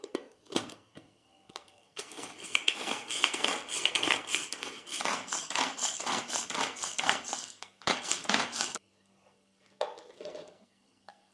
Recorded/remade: remade